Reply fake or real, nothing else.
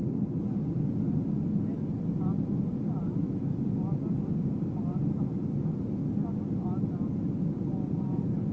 real